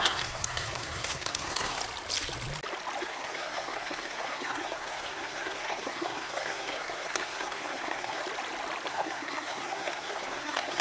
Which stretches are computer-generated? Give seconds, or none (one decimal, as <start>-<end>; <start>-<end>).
0.0-1.8; 3.0-8.2; 8.9-10.8